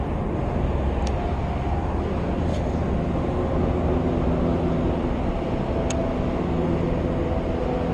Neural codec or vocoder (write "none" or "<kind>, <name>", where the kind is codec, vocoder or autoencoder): none